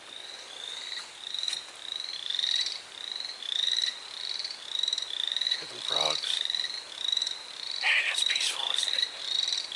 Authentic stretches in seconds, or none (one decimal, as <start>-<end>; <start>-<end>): none